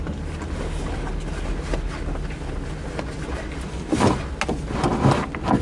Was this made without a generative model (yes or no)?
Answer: yes